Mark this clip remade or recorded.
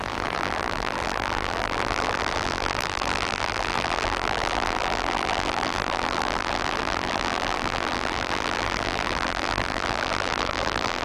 remade